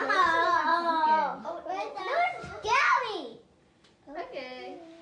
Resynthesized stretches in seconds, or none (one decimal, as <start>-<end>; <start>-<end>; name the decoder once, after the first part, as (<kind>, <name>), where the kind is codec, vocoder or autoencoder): none